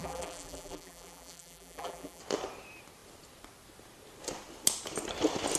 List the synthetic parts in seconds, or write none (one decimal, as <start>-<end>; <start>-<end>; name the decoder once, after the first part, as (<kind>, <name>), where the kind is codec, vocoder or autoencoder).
0.0-2.2 (vocoder, BigVGAN v2)